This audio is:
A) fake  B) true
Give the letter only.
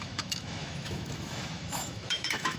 A